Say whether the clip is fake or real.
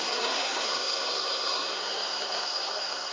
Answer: fake